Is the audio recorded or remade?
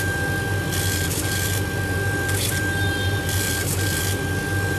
recorded